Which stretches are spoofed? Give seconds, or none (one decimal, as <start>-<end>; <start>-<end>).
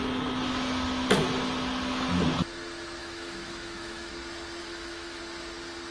3.0-4.1; 4.6-5.2